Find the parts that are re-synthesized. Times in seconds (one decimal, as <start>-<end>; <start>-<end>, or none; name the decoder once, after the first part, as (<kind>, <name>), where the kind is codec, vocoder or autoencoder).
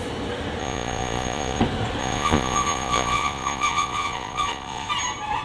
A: 0.6-1.6 (vocoder, Vocos); 2.0-4.9